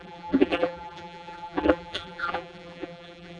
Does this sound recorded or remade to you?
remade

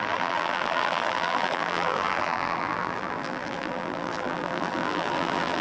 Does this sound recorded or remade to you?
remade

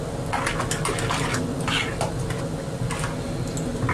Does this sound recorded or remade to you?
recorded